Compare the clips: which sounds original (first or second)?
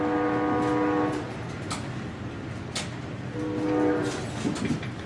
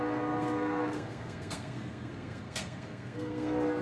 first